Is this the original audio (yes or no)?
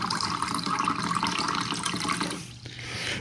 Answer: yes